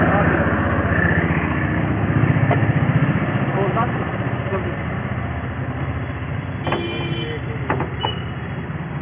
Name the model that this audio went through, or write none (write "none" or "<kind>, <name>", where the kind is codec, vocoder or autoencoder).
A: none